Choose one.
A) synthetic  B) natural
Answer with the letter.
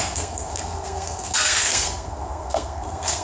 A